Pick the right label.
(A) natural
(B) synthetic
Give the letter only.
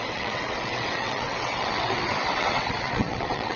B